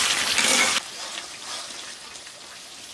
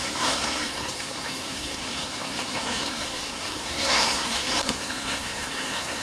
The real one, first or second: first